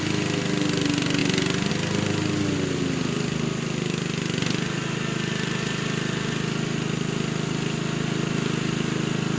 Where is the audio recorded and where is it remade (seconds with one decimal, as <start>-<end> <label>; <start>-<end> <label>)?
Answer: 0.0-9.4 recorded